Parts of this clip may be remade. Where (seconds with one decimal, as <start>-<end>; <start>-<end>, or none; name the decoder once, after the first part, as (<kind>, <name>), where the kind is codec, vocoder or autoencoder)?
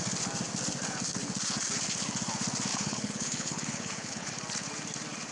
2.7-4.3 (codec, HILCodec)